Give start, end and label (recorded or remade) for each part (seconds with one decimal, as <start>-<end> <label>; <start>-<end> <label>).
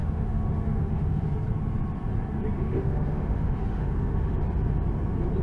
0.0-1.2 remade; 1.2-2.6 recorded; 2.6-4.4 remade; 4.4-5.4 recorded